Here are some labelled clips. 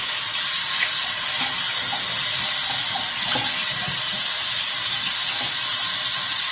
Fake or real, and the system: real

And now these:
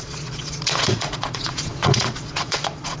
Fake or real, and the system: fake, vocoder, Vocos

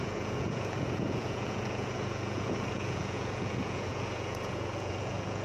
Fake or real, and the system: fake, vocoder, Vocos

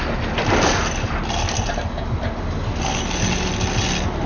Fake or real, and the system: real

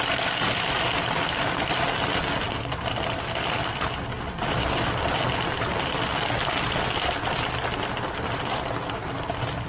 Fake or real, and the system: real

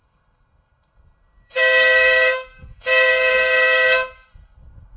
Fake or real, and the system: fake, codec, SNAC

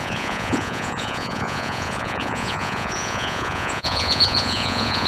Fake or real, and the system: fake, vocoder, Vocos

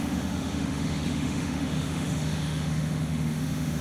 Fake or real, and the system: fake, autoencoder, DAC-VAE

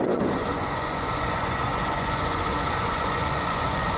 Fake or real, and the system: fake, vocoder, Vocos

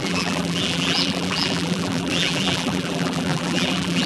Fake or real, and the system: fake, vocoder, BigVGAN v2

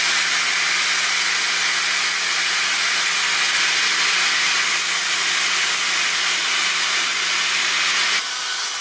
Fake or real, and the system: real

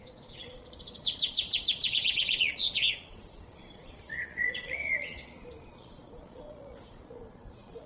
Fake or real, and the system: fake, vocoder, Vocos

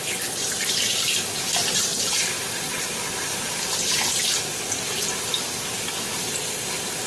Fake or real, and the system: real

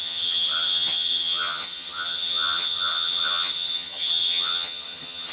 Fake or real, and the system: fake, vocoder, HiFi-GAN